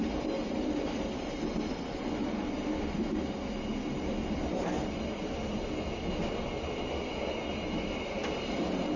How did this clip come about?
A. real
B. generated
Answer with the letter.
A